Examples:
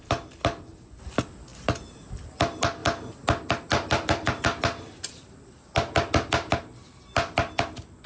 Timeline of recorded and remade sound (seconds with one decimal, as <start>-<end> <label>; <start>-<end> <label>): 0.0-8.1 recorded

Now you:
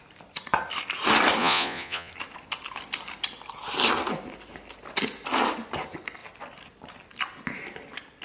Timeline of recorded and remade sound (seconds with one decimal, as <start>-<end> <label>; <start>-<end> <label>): 0.0-1.4 recorded; 1.4-2.1 remade; 2.1-8.2 recorded

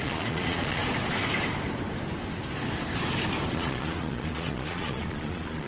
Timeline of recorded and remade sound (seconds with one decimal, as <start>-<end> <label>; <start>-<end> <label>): 0.0-0.8 remade; 0.8-3.5 recorded; 3.5-5.7 remade

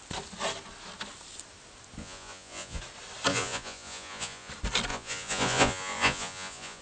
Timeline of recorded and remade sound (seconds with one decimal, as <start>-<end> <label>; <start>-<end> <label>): 0.0-2.0 recorded; 2.0-2.8 remade; 2.8-3.3 recorded; 3.3-4.5 remade; 4.5-4.9 recorded; 4.9-6.8 remade

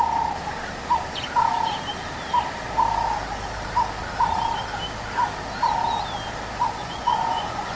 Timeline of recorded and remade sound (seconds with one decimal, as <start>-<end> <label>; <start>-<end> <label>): 0.0-6.8 recorded; 6.8-7.8 remade

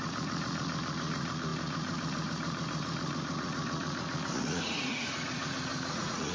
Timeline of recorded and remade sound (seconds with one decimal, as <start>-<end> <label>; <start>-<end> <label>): 0.0-6.3 remade